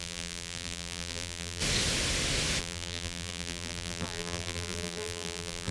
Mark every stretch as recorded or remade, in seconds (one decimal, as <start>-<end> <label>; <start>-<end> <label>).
0.0-1.6 remade; 1.6-2.6 recorded; 2.6-5.7 remade